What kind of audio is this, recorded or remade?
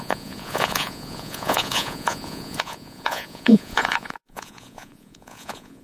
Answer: remade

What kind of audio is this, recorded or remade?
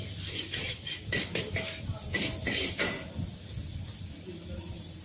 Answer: recorded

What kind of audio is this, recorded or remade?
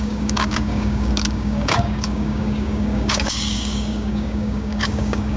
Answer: remade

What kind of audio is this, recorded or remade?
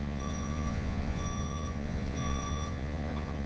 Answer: remade